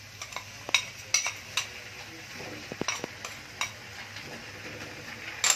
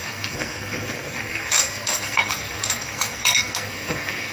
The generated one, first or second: second